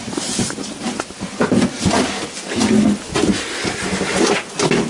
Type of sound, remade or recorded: recorded